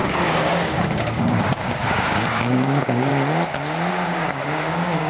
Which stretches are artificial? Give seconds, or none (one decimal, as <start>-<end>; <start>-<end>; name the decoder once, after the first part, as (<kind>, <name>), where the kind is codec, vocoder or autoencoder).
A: 0.0-3.1 (codec, DAC); 3.9-5.1